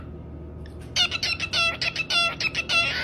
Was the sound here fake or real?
real